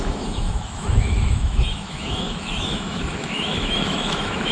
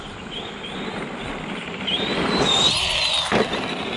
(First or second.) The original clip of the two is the second